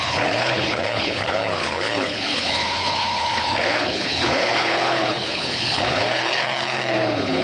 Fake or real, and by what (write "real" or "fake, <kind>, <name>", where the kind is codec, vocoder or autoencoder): fake, codec, HILCodec